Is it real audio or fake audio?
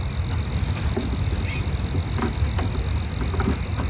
real